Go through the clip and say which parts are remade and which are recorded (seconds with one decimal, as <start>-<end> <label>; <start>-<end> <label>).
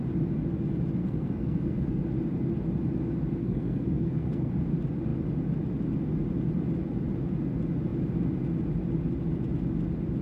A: 0.0-1.0 recorded; 1.0-2.0 remade; 2.0-3.4 recorded; 3.4-4.5 remade; 4.5-10.2 recorded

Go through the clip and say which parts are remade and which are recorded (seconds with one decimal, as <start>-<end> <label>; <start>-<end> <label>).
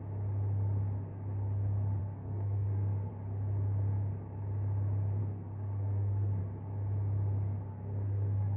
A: 0.0-2.0 recorded; 2.0-3.1 remade; 3.1-5.2 recorded; 5.2-6.4 remade; 6.4-7.7 recorded; 7.7-8.6 remade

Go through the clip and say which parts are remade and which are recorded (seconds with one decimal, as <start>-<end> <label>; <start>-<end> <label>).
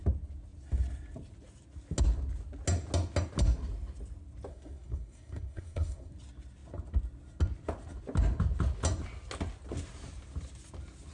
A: 0.0-4.5 recorded; 4.5-6.1 remade; 6.1-11.1 recorded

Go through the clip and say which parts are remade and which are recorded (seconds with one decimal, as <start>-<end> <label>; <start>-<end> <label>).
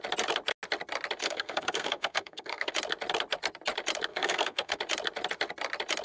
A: 0.0-1.2 recorded; 1.2-2.7 remade; 2.7-4.1 recorded; 4.1-4.8 remade; 4.8-6.0 recorded